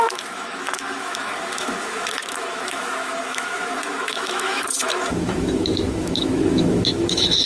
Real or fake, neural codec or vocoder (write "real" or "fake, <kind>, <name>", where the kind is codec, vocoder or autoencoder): fake, autoencoder, DAC-VAE